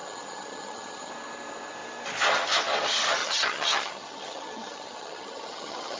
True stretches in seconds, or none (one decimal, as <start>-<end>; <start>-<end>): 1.1-3.2